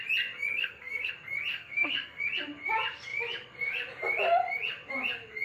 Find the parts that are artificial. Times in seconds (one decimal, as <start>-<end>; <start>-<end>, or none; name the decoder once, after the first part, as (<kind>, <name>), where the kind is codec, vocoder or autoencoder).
0.5-1.1 (codec, SNAC); 1.5-2.2